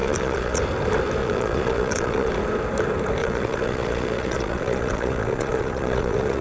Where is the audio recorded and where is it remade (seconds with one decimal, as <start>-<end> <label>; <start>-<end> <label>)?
0.0-0.6 remade; 0.6-1.2 recorded; 1.2-2.3 remade; 2.3-3.2 recorded; 3.2-6.4 remade